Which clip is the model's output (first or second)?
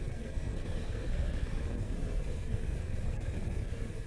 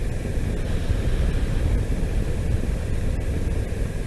first